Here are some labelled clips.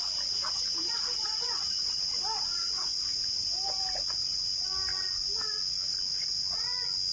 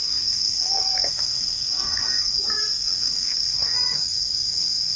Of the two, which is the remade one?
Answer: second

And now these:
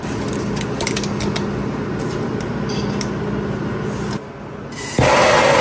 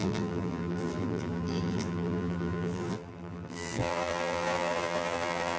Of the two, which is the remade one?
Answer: second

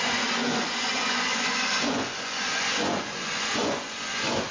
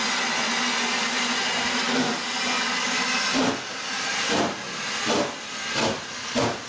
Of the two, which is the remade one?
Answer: first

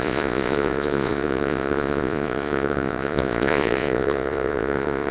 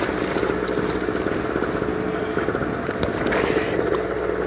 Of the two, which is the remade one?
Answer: first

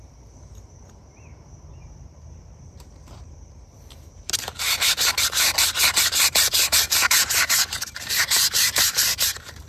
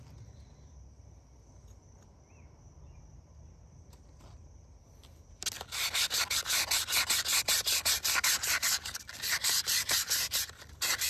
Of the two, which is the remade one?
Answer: first